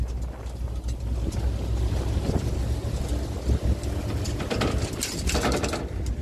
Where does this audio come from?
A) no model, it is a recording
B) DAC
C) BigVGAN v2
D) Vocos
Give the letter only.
A